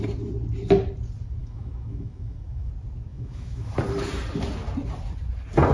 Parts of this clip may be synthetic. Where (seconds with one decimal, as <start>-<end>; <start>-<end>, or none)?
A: 1.4-2.7; 3.1-3.7